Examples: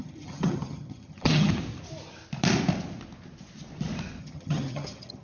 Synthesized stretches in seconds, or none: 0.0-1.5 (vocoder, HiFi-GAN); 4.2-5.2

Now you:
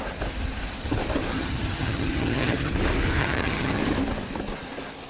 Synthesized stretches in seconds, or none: 1.3-2.7 (vocoder, HiFi-GAN); 3.2-3.8

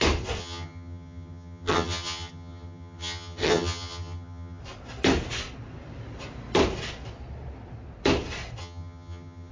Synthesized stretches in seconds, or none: 0.4-4.6 (vocoder, HiFi-GAN); 8.6-9.5